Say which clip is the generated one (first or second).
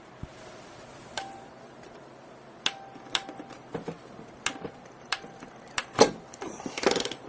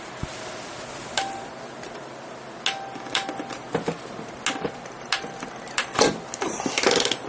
first